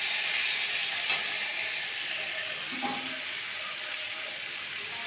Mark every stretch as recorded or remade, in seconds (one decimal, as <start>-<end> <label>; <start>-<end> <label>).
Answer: 0.0-5.1 recorded